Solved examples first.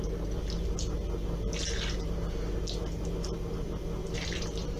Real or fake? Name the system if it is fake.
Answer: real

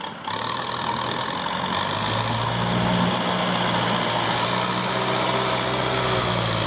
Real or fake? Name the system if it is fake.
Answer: real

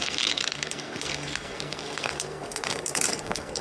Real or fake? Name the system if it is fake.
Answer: fake, codec, SNAC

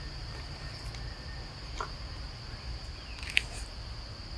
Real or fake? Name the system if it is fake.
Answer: real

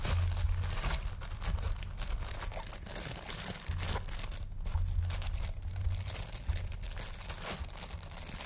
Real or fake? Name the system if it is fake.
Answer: real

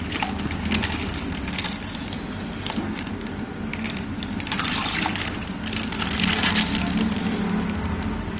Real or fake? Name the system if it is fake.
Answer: fake, vocoder, BigVGAN v2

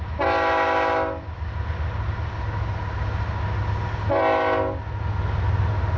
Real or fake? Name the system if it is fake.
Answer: real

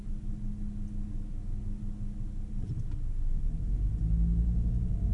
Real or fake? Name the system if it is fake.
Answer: real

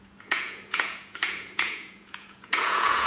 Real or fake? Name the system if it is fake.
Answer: fake, vocoder, Vocos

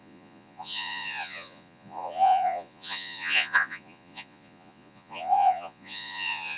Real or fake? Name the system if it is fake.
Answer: fake, vocoder, Vocos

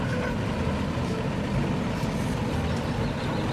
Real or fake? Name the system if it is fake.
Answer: real